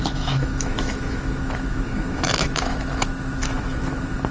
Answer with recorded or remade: remade